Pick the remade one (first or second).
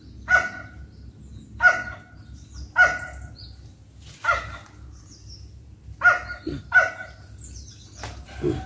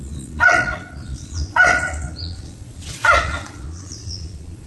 second